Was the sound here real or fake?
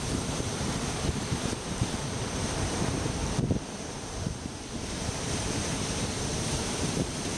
fake